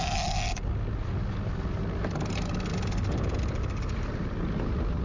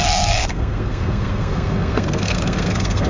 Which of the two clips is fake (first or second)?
second